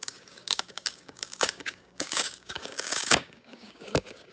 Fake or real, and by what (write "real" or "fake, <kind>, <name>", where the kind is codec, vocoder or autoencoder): fake, codec, DAC